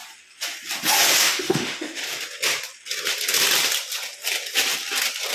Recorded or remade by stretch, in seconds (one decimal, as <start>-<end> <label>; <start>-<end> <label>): 0.0-1.2 recorded; 1.2-2.0 remade; 2.0-5.3 recorded